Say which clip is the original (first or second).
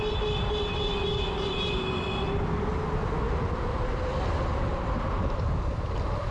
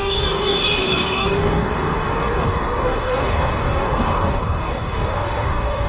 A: first